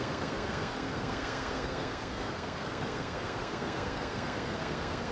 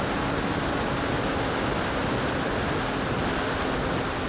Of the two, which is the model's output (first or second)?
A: first